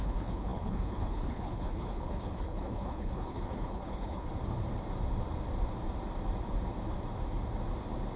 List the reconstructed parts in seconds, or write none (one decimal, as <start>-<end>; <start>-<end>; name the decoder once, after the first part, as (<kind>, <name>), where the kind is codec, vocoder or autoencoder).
0.0-4.3 (codec, HILCodec)